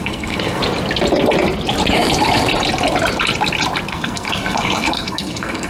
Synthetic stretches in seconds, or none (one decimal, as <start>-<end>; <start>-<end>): 0.0-0.6; 3.9-5.7

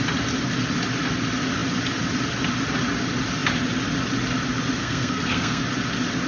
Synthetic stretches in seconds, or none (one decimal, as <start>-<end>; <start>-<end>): 4.8-5.6